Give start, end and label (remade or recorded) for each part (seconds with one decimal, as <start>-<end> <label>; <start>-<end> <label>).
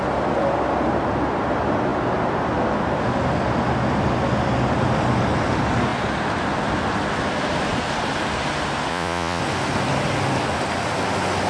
0.0-8.9 recorded; 8.9-9.4 remade; 9.4-11.5 recorded